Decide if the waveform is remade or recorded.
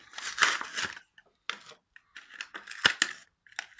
recorded